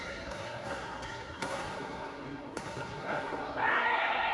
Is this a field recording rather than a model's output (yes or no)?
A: no